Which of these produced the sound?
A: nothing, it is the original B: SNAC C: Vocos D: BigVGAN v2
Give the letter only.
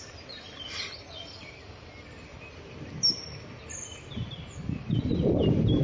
A